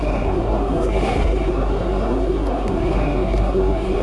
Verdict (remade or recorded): remade